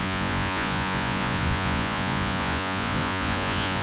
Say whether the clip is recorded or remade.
remade